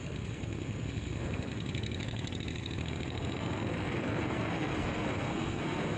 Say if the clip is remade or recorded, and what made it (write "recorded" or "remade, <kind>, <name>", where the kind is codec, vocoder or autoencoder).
remade, codec, SNAC